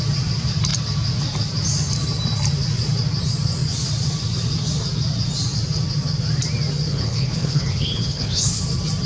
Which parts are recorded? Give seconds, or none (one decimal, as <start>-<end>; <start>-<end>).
0.0-6.9; 8.6-9.1

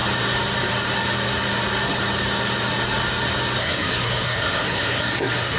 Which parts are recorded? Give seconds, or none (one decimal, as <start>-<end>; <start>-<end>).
0.0-3.6

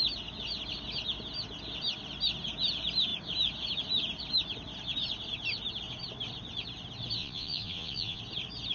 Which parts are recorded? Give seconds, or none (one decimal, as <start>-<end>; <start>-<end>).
0.0-7.2; 8.2-8.7

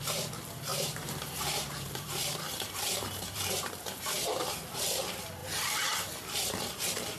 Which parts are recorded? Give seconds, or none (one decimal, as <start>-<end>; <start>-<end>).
0.0-0.7; 5.0-5.4; 6.1-7.2

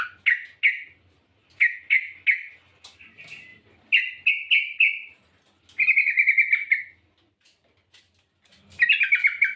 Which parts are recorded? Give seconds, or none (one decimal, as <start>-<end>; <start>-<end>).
0.0-9.6

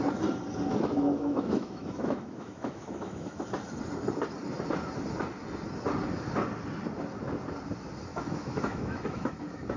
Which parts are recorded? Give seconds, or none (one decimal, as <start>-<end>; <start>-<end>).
0.0-0.7; 3.4-8.1; 9.4-9.8

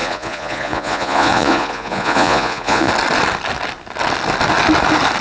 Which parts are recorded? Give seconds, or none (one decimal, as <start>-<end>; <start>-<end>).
2.9-5.2

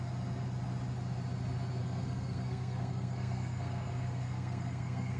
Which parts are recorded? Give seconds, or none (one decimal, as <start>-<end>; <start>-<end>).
0.0-1.8